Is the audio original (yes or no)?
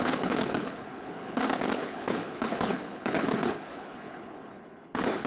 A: no